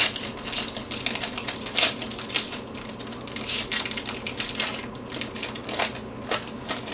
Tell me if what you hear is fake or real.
real